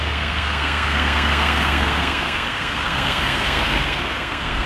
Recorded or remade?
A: remade